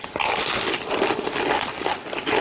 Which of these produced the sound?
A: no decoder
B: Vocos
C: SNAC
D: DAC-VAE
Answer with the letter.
A